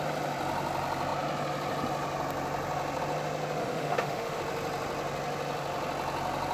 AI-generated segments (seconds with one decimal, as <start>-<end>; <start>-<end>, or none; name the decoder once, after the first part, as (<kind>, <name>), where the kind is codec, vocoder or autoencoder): 3.6-4.4 (autoencoder, DAC-VAE)